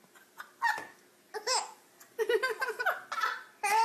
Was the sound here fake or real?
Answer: real